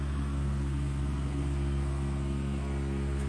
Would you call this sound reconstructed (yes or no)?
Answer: yes